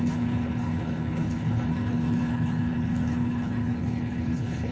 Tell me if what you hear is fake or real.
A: fake